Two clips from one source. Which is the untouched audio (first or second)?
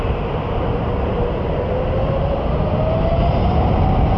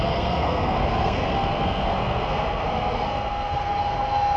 first